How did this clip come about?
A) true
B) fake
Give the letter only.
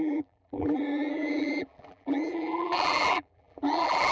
B